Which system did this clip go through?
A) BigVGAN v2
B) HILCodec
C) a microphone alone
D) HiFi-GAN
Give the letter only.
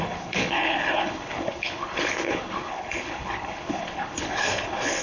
B